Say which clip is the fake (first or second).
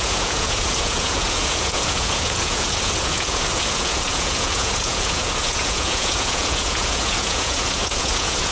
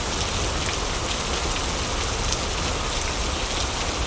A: first